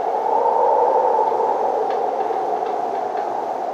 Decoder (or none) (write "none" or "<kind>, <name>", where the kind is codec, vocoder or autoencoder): none